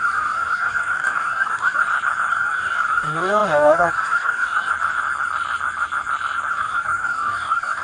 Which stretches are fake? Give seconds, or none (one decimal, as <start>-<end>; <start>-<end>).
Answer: 0.0-1.8; 2.3-4.7; 6.5-7.8